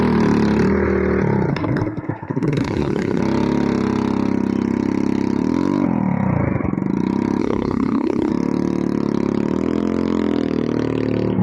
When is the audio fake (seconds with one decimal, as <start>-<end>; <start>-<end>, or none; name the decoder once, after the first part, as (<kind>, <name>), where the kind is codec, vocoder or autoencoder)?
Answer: 1.5-3.2 (codec, SNAC); 7.4-8.3